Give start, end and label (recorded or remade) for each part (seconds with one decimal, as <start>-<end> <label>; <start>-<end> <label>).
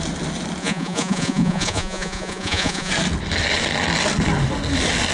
0.0-0.6 recorded; 0.6-2.9 remade; 2.9-5.1 recorded